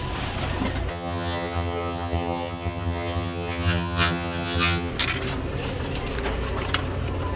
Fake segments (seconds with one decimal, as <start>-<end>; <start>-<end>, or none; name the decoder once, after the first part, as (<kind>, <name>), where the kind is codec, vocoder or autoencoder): 0.9-4.9 (vocoder, HiFi-GAN)